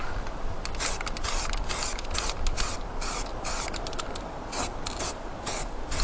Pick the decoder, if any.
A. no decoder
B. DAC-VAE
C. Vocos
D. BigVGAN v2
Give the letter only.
A